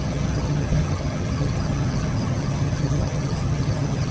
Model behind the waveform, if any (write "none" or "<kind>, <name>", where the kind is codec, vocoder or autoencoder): vocoder, HiFi-GAN